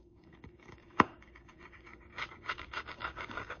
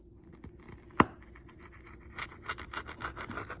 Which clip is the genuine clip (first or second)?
second